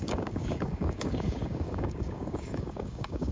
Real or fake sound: fake